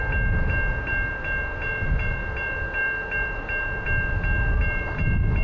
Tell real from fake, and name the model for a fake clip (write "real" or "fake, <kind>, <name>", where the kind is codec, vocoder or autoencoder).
real